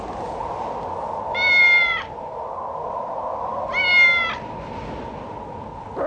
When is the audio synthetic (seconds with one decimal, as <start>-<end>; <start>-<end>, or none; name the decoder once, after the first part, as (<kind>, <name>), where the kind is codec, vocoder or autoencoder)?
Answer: none